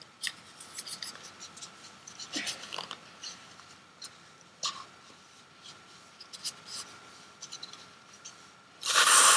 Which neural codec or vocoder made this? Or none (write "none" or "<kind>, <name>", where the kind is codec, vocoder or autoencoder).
none